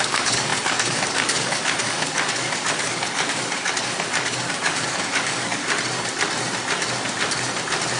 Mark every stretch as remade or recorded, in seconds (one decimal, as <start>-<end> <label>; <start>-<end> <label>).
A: 0.0-5.6 remade; 5.6-8.0 recorded